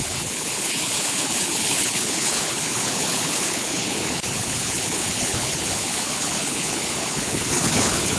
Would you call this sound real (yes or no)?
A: no